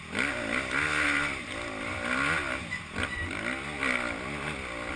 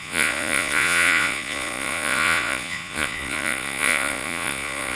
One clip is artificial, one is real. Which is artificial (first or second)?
second